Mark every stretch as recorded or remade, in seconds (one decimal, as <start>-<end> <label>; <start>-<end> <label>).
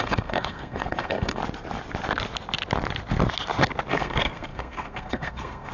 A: 0.0-1.4 remade; 1.4-3.9 recorded; 3.9-5.7 remade